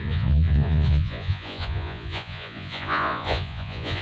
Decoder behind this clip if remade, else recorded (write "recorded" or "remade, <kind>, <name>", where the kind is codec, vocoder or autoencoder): remade, vocoder, Vocos